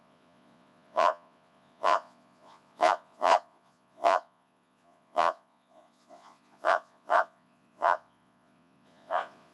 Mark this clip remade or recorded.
remade